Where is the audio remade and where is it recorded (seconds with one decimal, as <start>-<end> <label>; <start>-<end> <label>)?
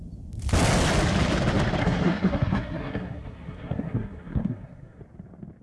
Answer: 0.0-1.8 recorded; 1.8-5.0 remade; 5.0-5.6 recorded